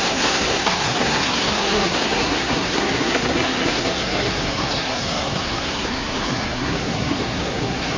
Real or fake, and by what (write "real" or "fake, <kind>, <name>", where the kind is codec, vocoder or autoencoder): fake, codec, SNAC